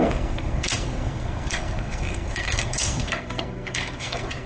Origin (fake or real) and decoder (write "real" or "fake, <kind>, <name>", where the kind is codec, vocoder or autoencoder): fake, codec, SNAC